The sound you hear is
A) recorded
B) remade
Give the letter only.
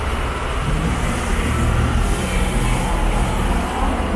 A